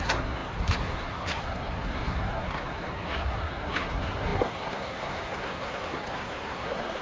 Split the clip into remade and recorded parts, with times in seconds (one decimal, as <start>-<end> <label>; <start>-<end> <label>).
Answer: 0.0-7.0 remade